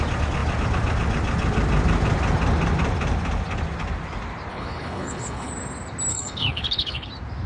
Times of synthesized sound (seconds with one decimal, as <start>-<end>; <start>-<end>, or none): 4.5-5.5; 6.1-7.1